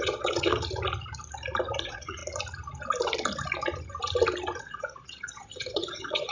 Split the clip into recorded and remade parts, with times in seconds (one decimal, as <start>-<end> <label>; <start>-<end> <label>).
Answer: 0.0-0.5 remade; 0.5-1.8 recorded; 1.8-2.2 remade; 2.2-4.6 recorded; 4.6-6.3 remade